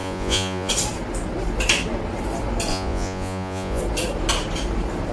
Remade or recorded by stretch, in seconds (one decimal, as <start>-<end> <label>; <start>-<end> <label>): 0.0-0.7 remade; 0.7-2.7 recorded; 2.7-3.8 remade; 3.8-5.1 recorded